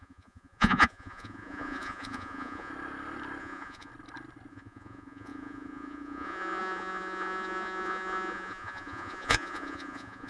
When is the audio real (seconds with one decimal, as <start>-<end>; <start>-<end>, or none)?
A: 2.7-3.4; 3.9-4.5